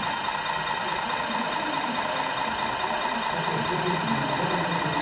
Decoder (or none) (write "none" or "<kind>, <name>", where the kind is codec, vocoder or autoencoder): none